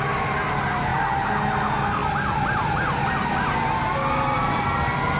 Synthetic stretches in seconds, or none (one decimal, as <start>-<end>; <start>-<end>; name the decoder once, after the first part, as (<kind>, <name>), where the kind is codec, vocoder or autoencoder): none

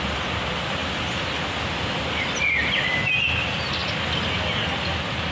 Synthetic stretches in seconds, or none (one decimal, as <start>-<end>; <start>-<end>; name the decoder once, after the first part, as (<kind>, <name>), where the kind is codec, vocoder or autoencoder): none